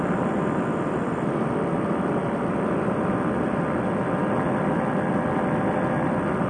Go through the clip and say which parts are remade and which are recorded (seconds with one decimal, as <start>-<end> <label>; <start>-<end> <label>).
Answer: 0.0-6.5 recorded